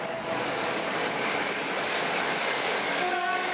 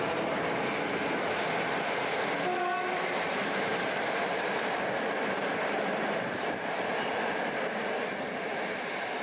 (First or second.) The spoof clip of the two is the first